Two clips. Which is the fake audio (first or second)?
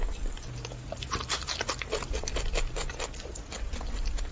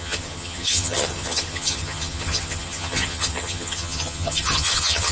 second